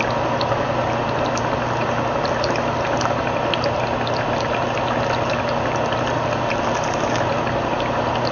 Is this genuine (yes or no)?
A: yes